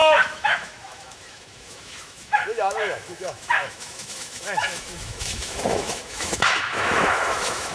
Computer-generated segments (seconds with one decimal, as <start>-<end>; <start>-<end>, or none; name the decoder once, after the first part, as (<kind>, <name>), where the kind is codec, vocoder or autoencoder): 0.0-7.7 (autoencoder, DAC-VAE)